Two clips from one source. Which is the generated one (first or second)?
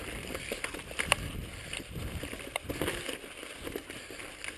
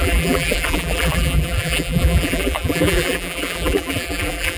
second